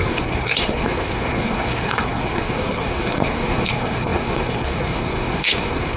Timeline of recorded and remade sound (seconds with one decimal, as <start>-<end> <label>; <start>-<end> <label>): 0.0-6.0 remade